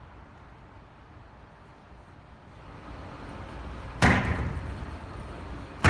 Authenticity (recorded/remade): recorded